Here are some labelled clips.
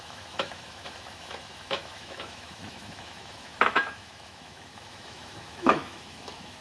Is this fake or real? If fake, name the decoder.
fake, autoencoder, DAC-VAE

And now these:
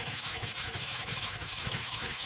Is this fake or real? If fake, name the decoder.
fake, autoencoder, DAC-VAE